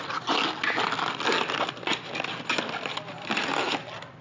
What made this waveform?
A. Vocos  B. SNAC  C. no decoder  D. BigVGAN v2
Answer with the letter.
C